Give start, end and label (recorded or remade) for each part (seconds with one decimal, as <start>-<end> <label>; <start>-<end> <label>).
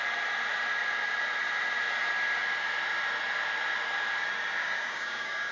0.0-4.6 recorded; 4.6-5.5 remade